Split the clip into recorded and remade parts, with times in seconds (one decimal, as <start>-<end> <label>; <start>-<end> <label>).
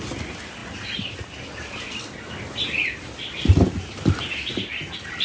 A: 0.0-5.2 recorded